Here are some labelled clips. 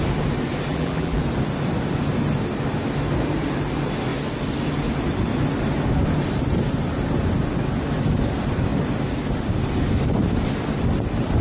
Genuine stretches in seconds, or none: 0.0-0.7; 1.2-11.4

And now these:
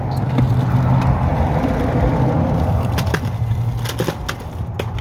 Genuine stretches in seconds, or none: 0.0-1.3; 3.5-5.0

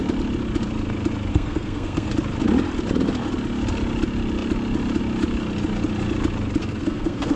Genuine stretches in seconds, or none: 0.0-1.3; 2.1-6.6

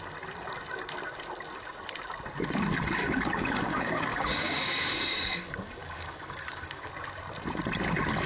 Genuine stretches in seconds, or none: 0.0-3.0; 6.9-8.3